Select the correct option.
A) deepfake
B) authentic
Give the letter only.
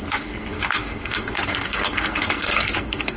A